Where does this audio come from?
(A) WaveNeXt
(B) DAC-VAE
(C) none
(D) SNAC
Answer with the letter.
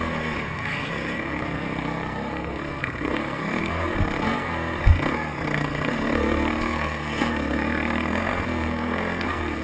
D